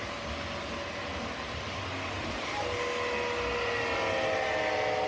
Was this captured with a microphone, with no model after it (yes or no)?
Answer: yes